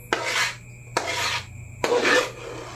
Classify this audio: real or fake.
real